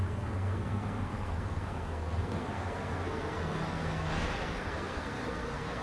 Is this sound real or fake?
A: fake